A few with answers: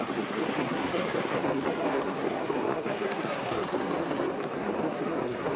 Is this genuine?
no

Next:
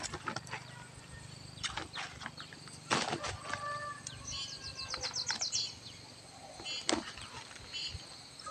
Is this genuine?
yes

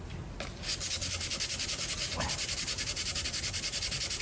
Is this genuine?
yes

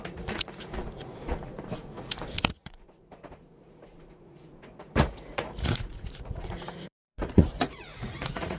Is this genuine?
no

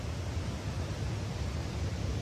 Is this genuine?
yes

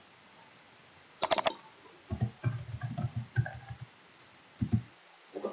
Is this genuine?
yes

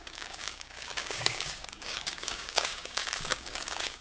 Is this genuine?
no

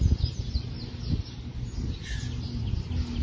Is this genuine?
yes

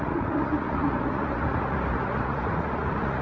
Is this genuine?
no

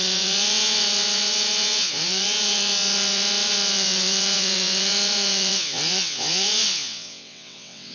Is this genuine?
no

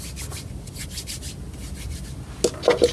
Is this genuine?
yes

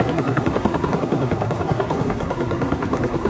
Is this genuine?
no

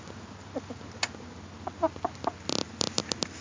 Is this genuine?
yes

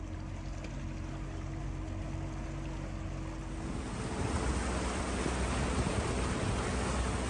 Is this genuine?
yes